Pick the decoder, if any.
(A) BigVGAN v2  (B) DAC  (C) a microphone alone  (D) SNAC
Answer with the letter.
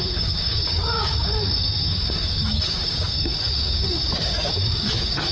B